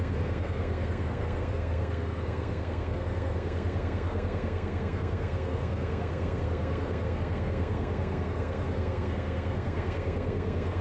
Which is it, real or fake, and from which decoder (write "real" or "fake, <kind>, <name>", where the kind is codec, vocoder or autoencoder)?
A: fake, codec, SNAC